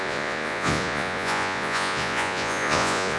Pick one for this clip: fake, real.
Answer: fake